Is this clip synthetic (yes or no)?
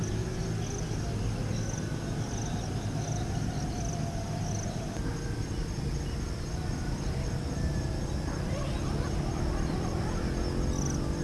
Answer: no